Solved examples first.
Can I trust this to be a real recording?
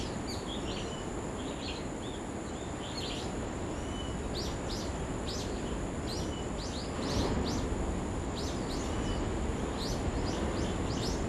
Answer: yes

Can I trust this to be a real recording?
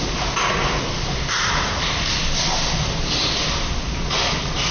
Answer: yes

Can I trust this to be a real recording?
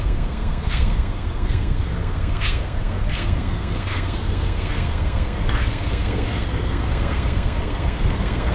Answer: no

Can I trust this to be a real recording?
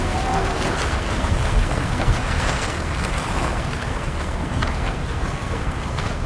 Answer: no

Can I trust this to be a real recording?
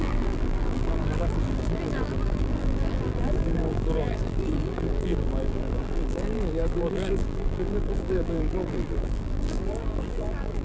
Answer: no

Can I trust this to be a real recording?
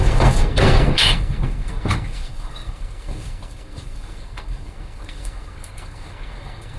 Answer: no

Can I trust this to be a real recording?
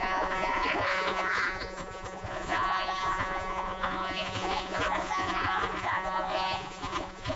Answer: no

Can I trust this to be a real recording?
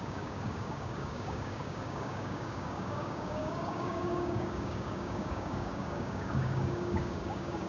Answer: no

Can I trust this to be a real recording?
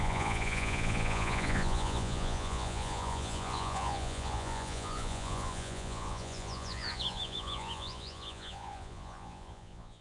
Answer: no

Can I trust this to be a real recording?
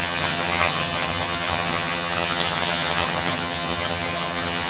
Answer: no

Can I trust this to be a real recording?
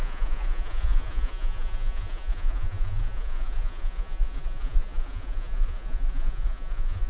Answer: no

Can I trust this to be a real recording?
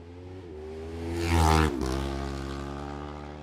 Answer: yes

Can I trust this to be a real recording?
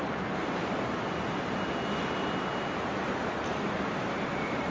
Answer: yes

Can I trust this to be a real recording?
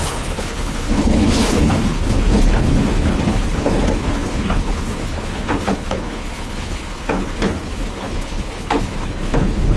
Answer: no